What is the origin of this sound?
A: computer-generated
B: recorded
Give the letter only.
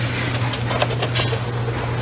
B